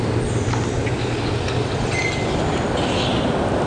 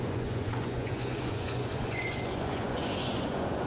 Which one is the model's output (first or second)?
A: second